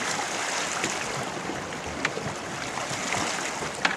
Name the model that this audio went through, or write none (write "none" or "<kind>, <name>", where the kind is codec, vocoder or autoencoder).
none